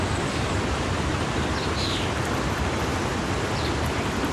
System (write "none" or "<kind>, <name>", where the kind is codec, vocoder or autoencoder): vocoder, BigVGAN v2